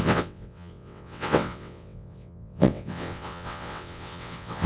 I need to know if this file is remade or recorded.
remade